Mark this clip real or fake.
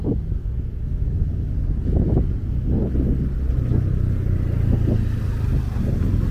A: real